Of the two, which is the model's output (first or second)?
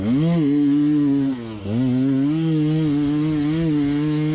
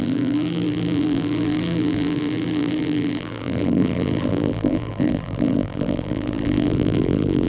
second